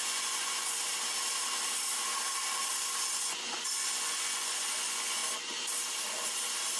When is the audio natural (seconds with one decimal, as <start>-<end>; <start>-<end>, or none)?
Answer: 0.9-2.8; 5.2-6.8